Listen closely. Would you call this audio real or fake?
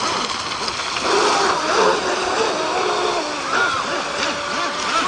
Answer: real